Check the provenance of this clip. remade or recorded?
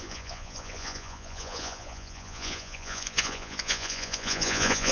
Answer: remade